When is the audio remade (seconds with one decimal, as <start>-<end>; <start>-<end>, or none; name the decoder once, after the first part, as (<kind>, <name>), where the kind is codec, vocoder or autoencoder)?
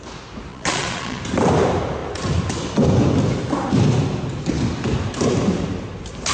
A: 0.5-1.2 (vocoder, Vocos)